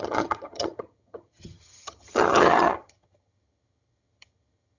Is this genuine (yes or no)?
no